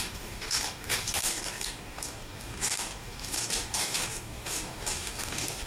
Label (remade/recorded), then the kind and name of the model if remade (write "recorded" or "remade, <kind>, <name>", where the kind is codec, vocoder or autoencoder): remade, codec, DAC